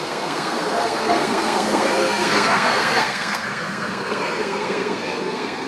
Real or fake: fake